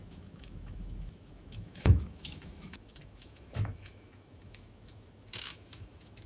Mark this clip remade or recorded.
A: remade